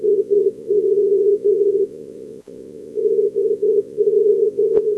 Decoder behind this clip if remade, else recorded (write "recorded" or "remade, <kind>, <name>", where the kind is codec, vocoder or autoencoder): remade, vocoder, Vocos